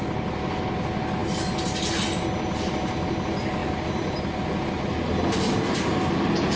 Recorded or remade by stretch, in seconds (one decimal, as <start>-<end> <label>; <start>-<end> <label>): 0.0-6.6 recorded